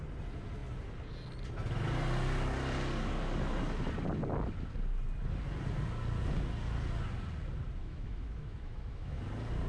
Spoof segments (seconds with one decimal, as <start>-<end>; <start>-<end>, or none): 7.8-9.2